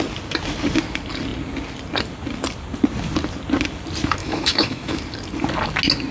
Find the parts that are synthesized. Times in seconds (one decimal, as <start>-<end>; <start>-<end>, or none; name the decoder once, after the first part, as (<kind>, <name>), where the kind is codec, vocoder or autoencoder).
4.2-5.0 (autoencoder, DAC-VAE)